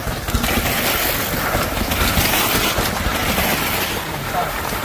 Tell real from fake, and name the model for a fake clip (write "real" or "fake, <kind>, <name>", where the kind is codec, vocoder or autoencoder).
real